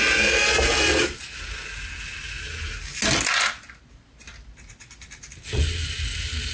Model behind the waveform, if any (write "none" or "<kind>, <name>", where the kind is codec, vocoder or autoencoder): none